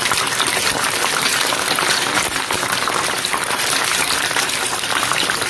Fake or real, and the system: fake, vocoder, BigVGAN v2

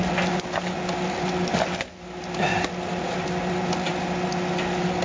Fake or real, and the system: real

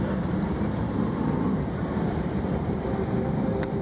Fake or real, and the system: fake, vocoder, BigVGAN v2